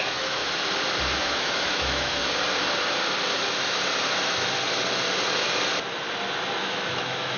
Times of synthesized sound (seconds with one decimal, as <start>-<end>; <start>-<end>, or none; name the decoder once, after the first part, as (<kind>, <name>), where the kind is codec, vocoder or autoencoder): 0.0-0.4 (autoencoder, DAC-VAE); 1.2-2.2; 6.6-7.4